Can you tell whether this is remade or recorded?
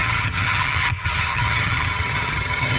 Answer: remade